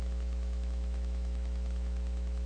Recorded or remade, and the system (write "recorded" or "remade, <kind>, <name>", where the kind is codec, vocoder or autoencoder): remade, autoencoder, DAC-VAE